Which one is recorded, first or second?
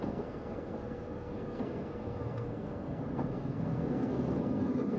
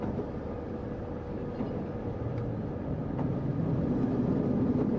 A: second